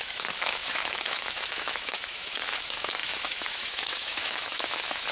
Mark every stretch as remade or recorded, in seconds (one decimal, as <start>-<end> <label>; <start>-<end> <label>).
0.0-5.1 remade